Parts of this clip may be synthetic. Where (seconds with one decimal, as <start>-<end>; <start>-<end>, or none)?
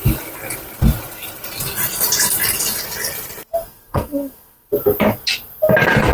3.7-4.7